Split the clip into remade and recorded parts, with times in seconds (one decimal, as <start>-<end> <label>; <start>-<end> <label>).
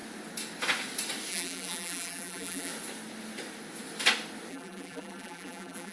0.0-1.3 recorded; 1.3-2.7 remade; 2.7-4.5 recorded; 4.5-5.9 remade